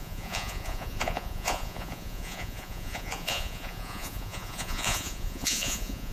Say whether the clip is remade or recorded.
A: remade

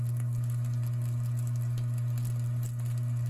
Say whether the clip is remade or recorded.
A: recorded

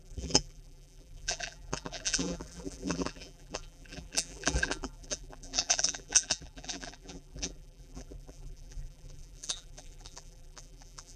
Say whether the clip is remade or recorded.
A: remade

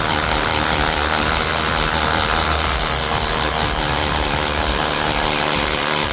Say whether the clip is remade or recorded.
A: remade